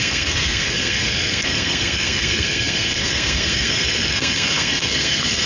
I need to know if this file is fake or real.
fake